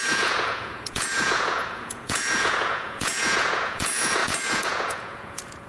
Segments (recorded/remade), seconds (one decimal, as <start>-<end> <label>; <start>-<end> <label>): 0.0-5.7 remade

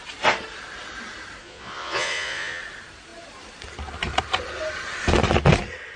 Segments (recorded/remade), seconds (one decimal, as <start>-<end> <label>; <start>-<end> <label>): 0.0-1.4 recorded; 1.4-2.6 remade; 2.6-6.0 recorded

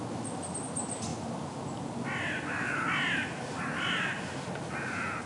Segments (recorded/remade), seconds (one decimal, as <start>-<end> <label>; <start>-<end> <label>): 0.0-5.3 recorded

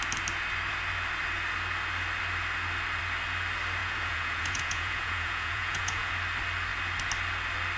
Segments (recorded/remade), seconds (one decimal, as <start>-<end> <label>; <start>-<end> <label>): 0.0-3.8 recorded; 3.8-6.1 remade; 6.1-7.8 recorded

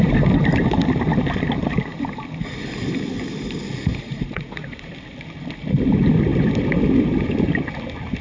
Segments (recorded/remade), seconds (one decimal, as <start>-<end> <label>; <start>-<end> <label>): 0.0-3.9 recorded; 3.9-4.8 remade; 4.8-8.2 recorded

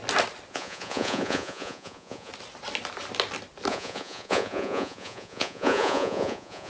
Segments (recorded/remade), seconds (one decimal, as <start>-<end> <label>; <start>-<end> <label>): 0.0-0.5 recorded; 0.5-2.3 remade; 2.3-3.7 recorded; 3.7-6.7 remade